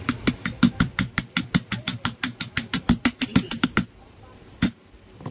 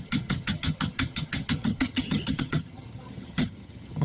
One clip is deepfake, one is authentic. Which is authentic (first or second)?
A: first